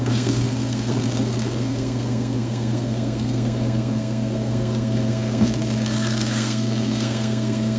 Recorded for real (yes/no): no